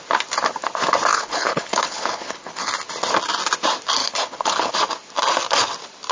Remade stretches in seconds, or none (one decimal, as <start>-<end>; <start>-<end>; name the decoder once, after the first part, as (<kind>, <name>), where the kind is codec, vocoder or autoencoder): 1.1-2.7 (codec, HILCodec); 4.0-4.7